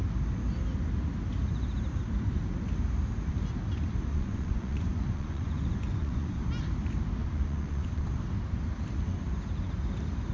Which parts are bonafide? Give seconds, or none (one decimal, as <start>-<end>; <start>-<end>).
0.0-4.1; 6.4-7.2; 8.1-10.3